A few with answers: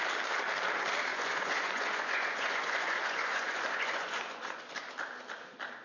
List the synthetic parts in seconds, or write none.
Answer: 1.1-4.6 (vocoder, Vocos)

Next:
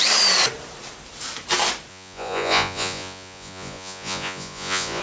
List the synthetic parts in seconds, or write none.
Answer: 1.9-5.0 (vocoder, Vocos)

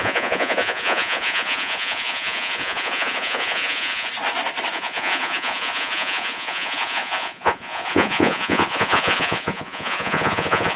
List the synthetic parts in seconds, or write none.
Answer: 0.0-4.1 (vocoder, Vocos); 4.7-10.8

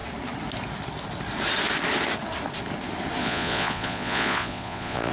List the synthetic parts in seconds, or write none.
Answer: 3.2-5.1 (vocoder, Vocos)

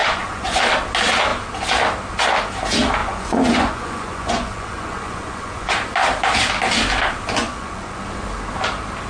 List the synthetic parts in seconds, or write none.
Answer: 0.0-0.6 (vocoder, Vocos); 3.0-5.7; 7.4-8.0

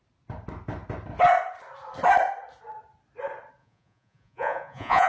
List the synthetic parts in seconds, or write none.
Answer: 3.6-5.1 (vocoder, Vocos)

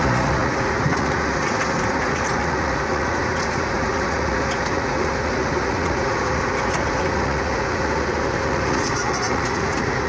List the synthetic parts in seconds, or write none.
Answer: 0.0-10.1 (vocoder, Vocos)

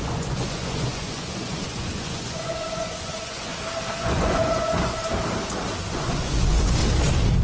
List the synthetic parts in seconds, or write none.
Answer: 0.0-3.5 (vocoder, Vocos); 4.0-5.0; 5.8-6.8